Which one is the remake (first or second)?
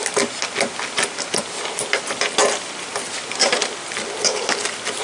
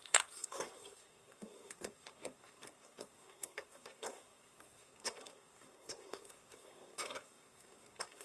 second